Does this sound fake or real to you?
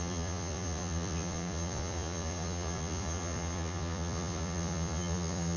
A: fake